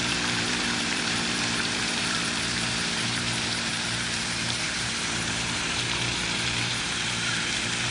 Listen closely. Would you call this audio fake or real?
fake